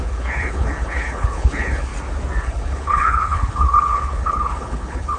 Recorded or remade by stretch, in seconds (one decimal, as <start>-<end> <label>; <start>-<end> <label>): 0.0-1.9 remade; 1.9-2.4 recorded; 2.4-5.2 remade